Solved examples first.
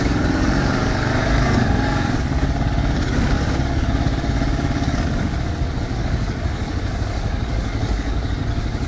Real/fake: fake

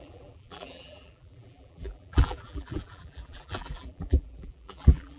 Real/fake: fake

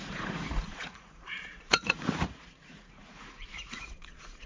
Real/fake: fake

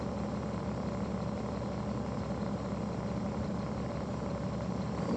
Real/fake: real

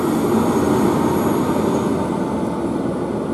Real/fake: real